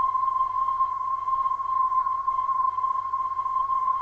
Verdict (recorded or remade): remade